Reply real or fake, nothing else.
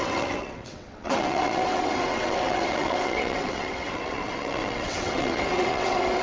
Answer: fake